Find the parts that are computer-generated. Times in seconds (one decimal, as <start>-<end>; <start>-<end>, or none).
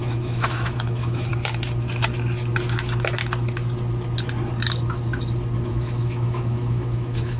0.0-1.3; 5.7-7.4